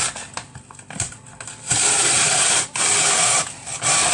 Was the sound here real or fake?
real